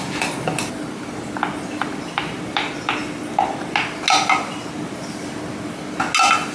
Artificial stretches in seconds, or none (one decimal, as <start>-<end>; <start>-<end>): none